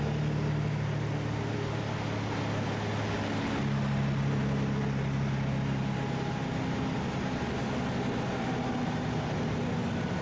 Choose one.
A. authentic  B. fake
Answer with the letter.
A